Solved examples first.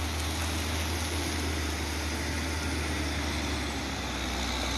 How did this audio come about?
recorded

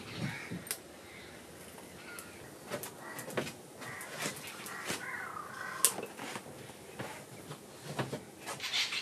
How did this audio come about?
recorded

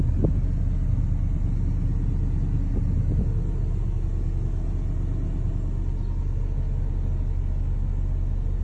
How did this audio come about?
recorded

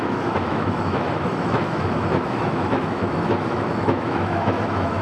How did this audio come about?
remade